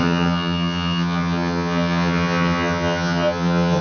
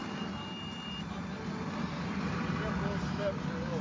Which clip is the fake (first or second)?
first